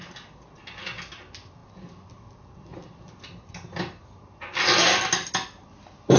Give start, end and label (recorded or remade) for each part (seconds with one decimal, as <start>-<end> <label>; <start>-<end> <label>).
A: 0.0-6.2 recorded